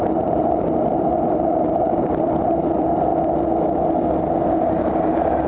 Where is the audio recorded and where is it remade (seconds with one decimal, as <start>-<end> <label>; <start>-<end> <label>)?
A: 0.0-3.1 remade; 3.1-4.5 recorded; 4.5-5.5 remade